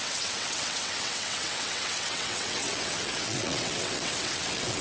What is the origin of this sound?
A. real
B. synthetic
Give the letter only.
B